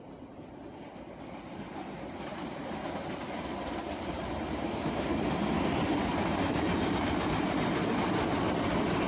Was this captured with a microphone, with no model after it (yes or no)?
yes